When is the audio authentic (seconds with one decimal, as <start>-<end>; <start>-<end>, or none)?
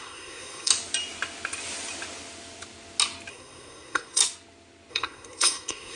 0.7-3.3; 4.2-4.9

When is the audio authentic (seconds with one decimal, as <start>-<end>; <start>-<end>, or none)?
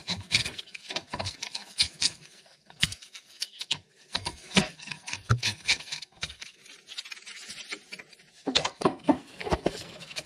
6.6-8.3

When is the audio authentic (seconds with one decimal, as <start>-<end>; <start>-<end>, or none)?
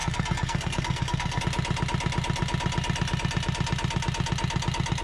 1.4-5.0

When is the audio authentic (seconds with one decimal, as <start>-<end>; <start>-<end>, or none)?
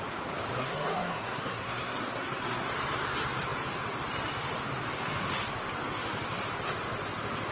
0.0-0.6; 2.7-7.5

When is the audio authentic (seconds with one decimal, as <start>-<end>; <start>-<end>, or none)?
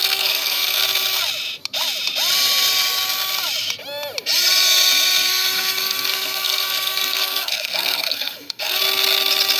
0.8-5.3; 8.8-9.6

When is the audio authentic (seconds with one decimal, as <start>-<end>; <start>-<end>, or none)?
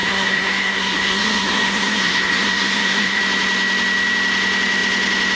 3.2-5.4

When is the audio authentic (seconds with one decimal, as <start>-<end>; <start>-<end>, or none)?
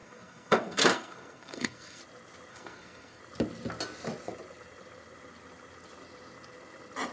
2.0-2.5; 3.2-7.1